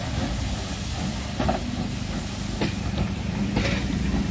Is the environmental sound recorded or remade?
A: recorded